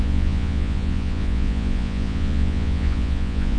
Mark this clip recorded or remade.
remade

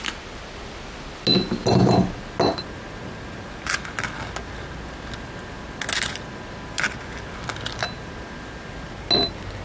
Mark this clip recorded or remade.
recorded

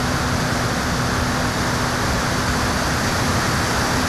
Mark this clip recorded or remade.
recorded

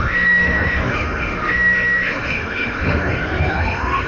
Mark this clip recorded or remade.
remade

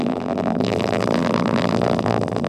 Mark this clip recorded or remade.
remade